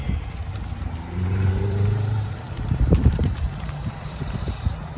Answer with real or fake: fake